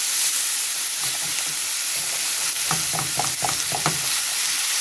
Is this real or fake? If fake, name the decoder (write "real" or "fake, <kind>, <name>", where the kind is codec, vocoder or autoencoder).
real